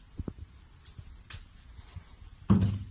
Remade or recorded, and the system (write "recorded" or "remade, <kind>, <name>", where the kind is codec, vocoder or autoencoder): recorded